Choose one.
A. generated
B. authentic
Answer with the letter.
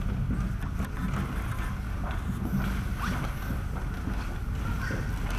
B